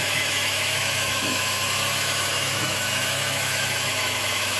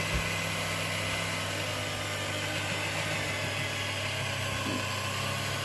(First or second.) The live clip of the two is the second